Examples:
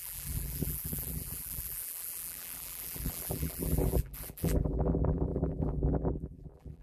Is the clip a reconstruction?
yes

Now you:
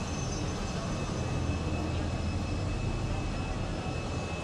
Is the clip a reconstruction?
no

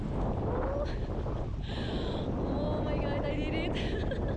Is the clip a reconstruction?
no